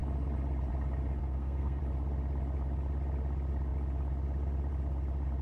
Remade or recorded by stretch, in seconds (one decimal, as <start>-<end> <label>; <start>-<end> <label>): 0.0-1.2 recorded; 1.2-1.8 remade; 1.8-5.4 recorded